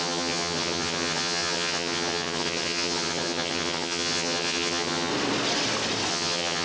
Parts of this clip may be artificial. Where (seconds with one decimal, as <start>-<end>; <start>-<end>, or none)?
0.0-5.1; 6.1-6.6